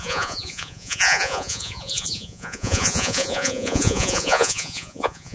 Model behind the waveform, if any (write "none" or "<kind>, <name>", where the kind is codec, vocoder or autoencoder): vocoder, Vocos